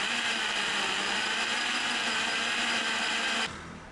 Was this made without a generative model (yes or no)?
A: yes